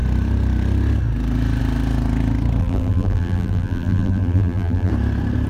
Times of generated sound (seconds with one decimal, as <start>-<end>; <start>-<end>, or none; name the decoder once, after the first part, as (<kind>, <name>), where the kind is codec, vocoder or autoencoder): 2.6-4.9 (vocoder, BigVGAN v2)